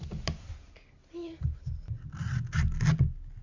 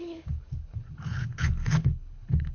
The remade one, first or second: second